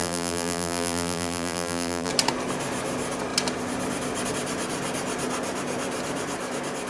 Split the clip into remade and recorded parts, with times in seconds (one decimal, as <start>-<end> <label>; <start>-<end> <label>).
0.0-2.1 remade; 2.1-6.9 recorded